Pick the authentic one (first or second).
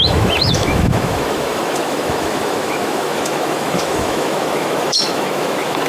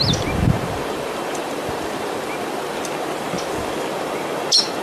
second